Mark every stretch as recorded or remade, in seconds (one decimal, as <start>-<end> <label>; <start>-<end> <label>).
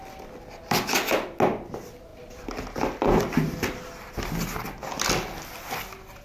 0.0-6.2 recorded